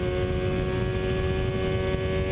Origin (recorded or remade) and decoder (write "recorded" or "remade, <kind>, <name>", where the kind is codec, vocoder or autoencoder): recorded